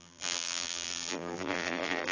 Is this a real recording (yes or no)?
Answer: no